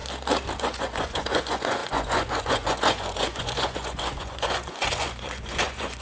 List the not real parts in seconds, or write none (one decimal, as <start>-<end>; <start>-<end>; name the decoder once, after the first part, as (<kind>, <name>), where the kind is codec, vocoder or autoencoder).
0.6-6.0 (vocoder, Vocos)